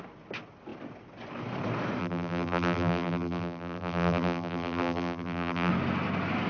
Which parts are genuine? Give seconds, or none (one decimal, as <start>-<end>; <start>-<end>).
0.0-2.0; 5.7-6.5